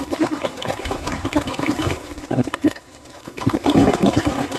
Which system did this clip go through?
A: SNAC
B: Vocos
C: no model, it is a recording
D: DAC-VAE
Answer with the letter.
A